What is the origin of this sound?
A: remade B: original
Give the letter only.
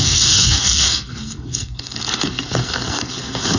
A